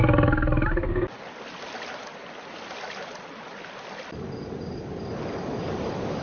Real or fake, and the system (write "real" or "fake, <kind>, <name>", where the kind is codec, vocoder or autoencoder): real